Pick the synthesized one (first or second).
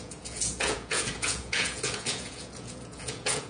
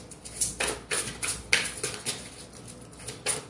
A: first